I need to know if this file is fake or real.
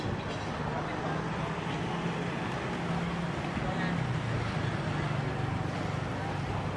real